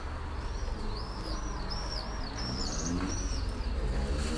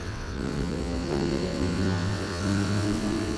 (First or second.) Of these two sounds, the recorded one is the first